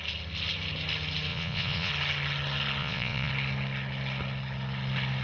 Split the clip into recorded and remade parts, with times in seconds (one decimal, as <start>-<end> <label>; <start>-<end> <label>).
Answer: 0.0-1.3 recorded; 1.3-1.9 remade; 1.9-2.8 recorded; 2.8-3.3 remade; 3.3-5.2 recorded